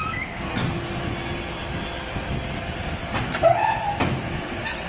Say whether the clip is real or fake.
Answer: real